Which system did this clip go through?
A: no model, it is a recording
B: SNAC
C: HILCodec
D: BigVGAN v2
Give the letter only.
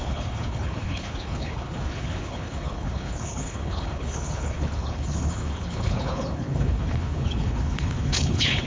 C